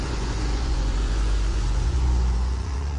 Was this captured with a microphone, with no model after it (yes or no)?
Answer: no